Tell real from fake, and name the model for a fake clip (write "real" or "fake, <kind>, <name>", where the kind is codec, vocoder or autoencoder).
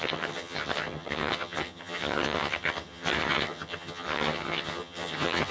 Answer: fake, vocoder, HiFi-GAN